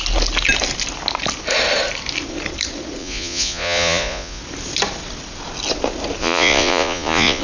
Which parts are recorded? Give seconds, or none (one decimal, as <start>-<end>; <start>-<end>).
0.0-3.0; 4.4-6.2